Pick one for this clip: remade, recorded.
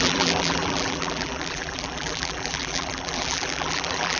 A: remade